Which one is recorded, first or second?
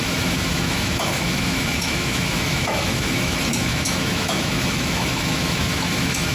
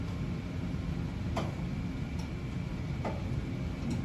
second